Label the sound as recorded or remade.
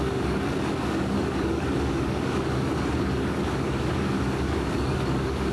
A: remade